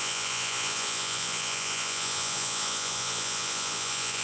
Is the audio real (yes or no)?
no